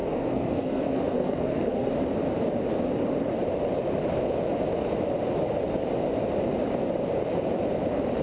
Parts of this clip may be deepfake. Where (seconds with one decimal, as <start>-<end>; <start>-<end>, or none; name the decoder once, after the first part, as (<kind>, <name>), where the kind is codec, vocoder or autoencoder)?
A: 0.0-1.9 (codec, SNAC)